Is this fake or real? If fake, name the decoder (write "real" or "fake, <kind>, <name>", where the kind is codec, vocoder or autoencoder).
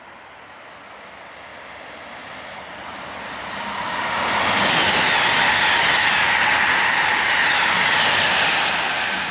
real